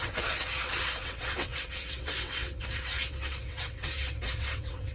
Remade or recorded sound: remade